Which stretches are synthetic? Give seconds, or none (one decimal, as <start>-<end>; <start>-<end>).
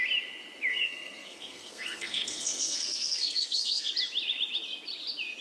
0.7-3.9